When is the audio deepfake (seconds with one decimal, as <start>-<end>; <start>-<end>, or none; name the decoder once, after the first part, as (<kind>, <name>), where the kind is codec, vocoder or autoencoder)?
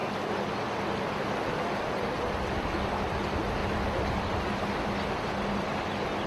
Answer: 3.6-4.5 (vocoder, BigVGAN v2)